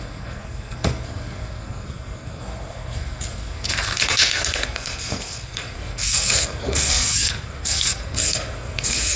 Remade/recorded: remade